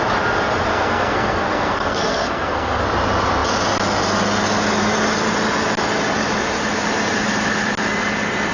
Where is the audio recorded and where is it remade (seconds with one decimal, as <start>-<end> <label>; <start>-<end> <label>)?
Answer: 0.0-0.7 recorded; 0.7-2.8 remade; 2.8-8.5 recorded